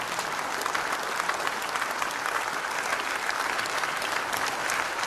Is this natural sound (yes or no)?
yes